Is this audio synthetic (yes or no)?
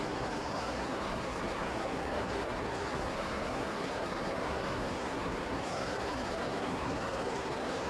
yes